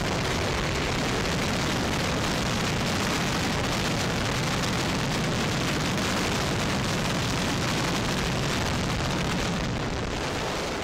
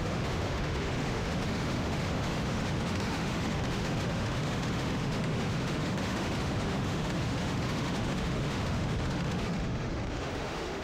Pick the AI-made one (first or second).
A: second